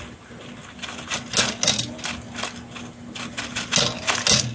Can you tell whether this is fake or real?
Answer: real